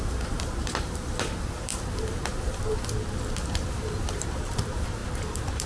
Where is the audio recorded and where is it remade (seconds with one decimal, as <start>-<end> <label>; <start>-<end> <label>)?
0.0-1.7 remade; 1.7-4.1 recorded; 4.1-5.7 remade